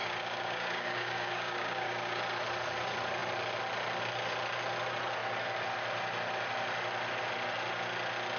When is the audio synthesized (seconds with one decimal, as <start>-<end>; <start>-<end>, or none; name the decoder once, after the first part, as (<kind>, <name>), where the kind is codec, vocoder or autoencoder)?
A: 0.0-2.2 (codec, DAC)